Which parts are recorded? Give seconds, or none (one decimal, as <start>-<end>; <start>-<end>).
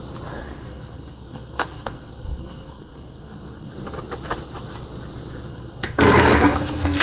0.0-0.4; 3.7-5.5